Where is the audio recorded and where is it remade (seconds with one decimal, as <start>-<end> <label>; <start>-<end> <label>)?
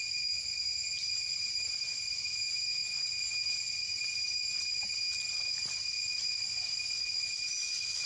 0.0-8.1 recorded